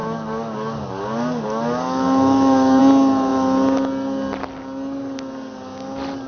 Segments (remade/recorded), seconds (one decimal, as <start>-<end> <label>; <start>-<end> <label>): 0.0-2.8 remade; 2.8-6.3 recorded